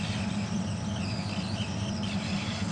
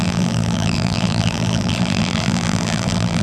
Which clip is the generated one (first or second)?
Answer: second